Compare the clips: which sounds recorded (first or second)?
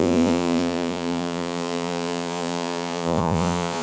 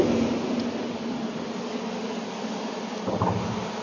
second